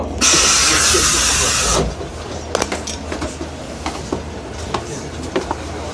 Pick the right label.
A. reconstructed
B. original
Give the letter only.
B